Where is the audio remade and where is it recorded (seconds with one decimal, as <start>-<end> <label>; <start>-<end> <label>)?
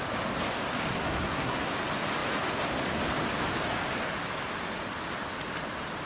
0.0-0.9 recorded; 0.9-1.7 remade; 1.7-6.1 recorded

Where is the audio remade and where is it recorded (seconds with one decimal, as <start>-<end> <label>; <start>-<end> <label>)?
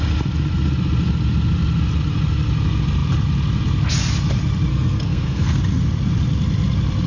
0.0-4.7 recorded; 4.7-5.6 remade; 5.6-7.1 recorded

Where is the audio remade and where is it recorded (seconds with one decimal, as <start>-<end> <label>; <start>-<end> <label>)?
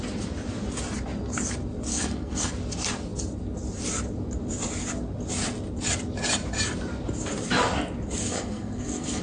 0.0-1.9 recorded; 1.9-2.5 remade; 2.5-8.2 recorded; 8.2-9.2 remade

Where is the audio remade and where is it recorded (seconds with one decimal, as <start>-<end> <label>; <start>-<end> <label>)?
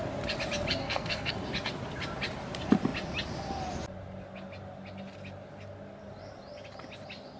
0.0-0.8 recorded; 0.8-1.3 remade; 1.3-7.4 recorded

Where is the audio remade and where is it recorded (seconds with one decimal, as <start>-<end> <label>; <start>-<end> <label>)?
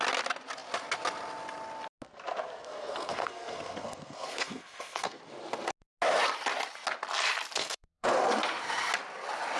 0.0-2.6 recorded; 2.6-5.2 remade; 5.2-7.6 recorded; 7.6-8.1 remade; 8.1-9.6 recorded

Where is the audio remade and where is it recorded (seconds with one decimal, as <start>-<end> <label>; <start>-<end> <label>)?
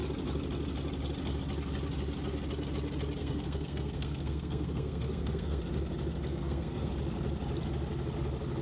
0.0-3.2 recorded; 3.2-5.6 remade; 5.6-6.3 recorded; 6.3-6.9 remade; 6.9-8.6 recorded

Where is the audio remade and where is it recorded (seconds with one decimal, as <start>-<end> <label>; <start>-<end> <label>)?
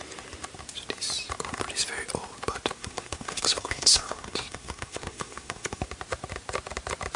0.0-2.8 recorded; 2.8-5.8 remade; 5.8-7.2 recorded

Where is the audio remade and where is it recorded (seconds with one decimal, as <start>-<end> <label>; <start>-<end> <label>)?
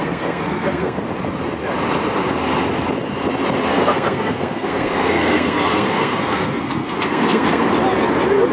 0.0-1.0 remade; 1.0-3.7 recorded; 3.7-7.6 remade; 7.6-8.5 recorded